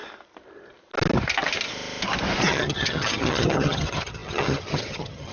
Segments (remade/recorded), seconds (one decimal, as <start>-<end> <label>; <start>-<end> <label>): 0.0-2.5 recorded; 2.5-5.3 remade